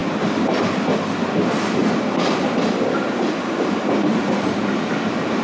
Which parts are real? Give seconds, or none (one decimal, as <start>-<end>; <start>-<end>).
0.0-5.4